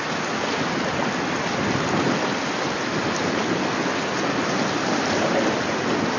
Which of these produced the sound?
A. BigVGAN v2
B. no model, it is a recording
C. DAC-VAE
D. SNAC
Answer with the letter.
B